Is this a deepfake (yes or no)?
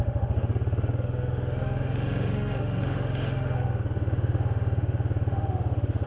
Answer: yes